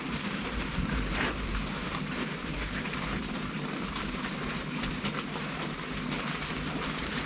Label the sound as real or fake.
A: fake